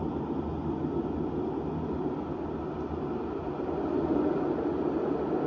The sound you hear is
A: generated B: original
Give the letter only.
B